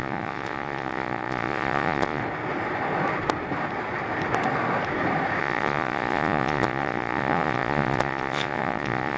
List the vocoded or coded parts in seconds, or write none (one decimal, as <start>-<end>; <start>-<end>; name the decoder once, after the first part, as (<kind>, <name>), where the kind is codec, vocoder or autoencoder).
0.0-2.2 (vocoder, Vocos); 5.4-9.2